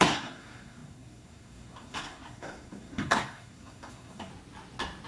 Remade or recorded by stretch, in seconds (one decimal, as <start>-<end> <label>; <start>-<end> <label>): 0.0-4.3 remade; 4.3-5.1 recorded

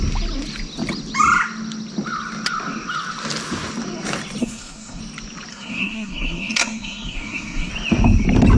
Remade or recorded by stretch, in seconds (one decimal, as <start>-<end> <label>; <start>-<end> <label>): 0.0-4.4 recorded; 4.4-5.0 remade; 5.0-5.5 recorded; 5.5-7.7 remade; 7.7-8.6 recorded